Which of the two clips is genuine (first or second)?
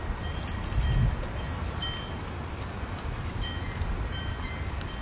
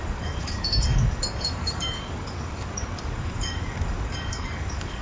first